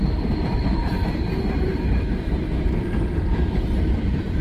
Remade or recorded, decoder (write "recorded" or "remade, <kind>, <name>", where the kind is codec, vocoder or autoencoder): remade, vocoder, BigVGAN v2